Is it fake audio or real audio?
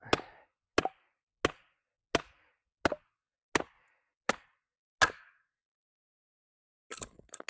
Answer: real